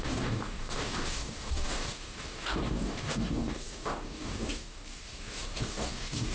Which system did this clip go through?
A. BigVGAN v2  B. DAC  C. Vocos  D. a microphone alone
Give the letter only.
B